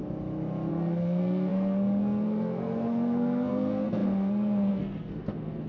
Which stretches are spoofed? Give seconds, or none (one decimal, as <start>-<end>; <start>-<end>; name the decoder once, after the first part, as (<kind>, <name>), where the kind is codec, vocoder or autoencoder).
0.7-5.7 (codec, SNAC)